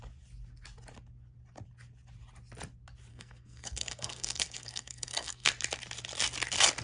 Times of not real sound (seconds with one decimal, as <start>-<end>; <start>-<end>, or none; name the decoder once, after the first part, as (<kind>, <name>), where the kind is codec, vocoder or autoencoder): 3.1-5.5 (codec, SNAC)